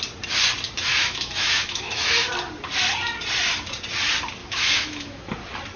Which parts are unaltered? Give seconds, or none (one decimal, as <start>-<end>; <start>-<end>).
0.0-0.9; 2.3-4.4; 5.2-5.8

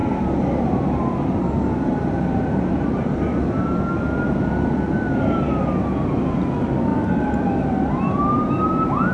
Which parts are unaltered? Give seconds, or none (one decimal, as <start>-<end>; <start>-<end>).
0.0-6.9; 7.9-9.1

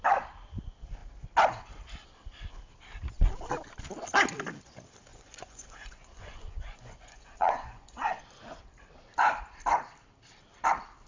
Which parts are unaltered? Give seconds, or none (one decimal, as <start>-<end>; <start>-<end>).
0.0-5.1; 8.2-11.1